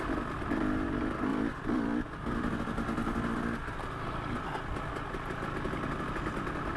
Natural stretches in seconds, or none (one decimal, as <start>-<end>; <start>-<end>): 0.0-1.3; 2.0-6.8